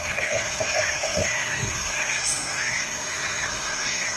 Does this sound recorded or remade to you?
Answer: remade